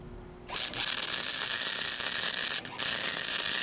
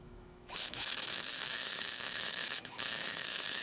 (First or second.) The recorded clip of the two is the first